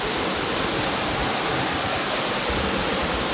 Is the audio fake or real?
real